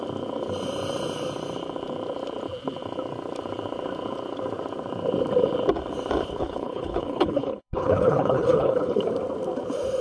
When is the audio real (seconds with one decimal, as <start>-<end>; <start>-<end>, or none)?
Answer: 0.0-6.2; 9.0-10.0